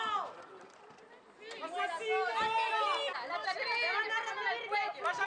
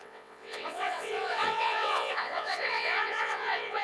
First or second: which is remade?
second